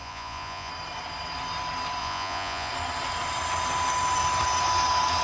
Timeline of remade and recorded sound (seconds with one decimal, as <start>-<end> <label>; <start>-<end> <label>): 0.0-0.7 remade; 0.7-2.0 recorded; 2.0-2.7 remade; 2.7-5.2 recorded